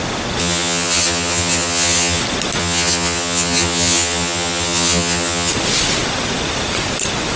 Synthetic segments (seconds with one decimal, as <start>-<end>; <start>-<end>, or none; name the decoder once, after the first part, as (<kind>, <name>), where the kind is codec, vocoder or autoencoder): 0.4-2.2 (vocoder, HiFi-GAN); 2.6-5.5